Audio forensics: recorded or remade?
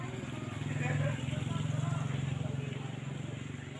recorded